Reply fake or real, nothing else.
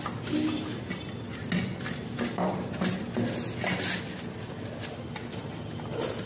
real